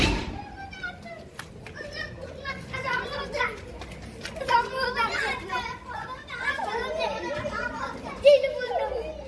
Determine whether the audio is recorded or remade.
recorded